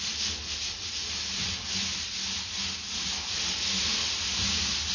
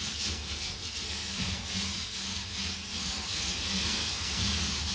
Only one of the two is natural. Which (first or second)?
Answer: first